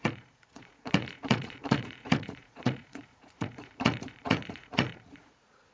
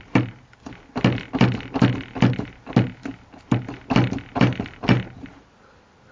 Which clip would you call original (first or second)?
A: second